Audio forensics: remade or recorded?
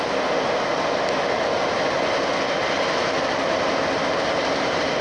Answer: recorded